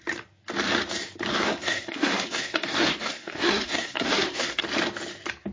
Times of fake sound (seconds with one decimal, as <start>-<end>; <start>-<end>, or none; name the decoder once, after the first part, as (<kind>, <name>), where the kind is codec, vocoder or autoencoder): 1.3-4.6 (codec, SNAC)